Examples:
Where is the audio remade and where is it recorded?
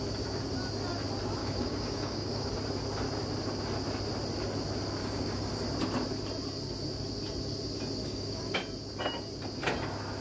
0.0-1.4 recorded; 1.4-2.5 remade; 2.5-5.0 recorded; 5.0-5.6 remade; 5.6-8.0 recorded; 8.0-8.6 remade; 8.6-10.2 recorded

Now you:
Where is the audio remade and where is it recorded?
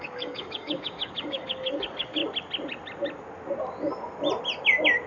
0.0-2.2 remade; 2.2-5.1 recorded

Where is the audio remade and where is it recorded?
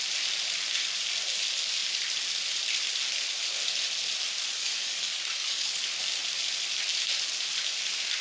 0.0-4.6 recorded; 4.6-5.8 remade; 5.8-8.2 recorded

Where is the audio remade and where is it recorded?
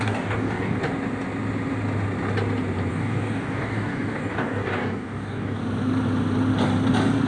0.0-0.8 remade; 0.8-2.9 recorded; 2.9-5.6 remade; 5.6-7.3 recorded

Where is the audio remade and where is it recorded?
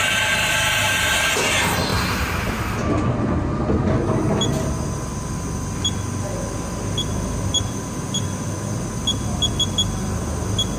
0.0-10.8 recorded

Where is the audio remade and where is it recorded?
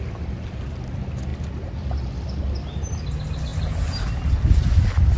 0.0-5.2 recorded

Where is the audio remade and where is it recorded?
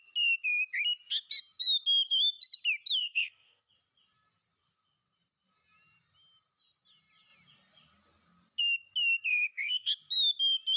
0.0-3.0 recorded; 3.0-3.7 remade; 3.7-9.3 recorded; 9.3-9.9 remade; 9.9-10.8 recorded